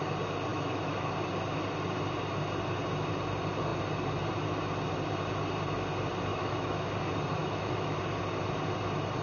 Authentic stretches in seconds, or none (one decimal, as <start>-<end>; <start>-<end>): 0.0-0.5; 1.1-6.3; 6.9-7.4; 8.0-9.2